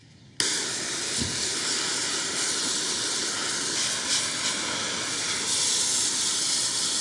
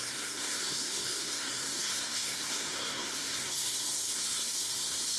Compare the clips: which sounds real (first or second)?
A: first